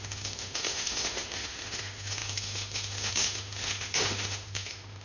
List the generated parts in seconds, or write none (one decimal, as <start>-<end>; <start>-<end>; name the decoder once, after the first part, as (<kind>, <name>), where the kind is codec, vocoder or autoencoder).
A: 0.0-5.0 (autoencoder, DAC-VAE)